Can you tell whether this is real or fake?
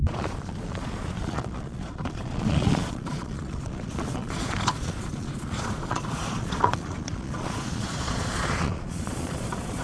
fake